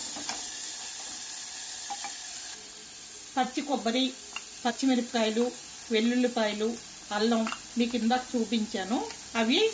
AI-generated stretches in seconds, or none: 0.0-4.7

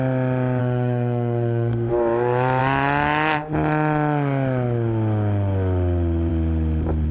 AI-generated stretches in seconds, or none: 0.6-1.9

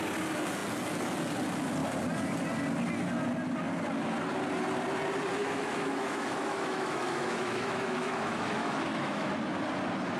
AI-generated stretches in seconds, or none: 5.4-9.3